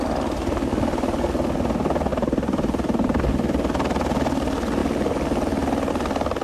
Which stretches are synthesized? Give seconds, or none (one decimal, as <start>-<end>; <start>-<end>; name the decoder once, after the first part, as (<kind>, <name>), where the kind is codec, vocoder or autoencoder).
2.1-3.2 (vocoder, BigVGAN v2)